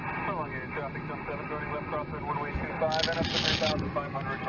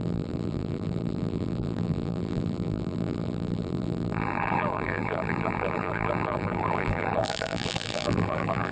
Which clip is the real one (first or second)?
first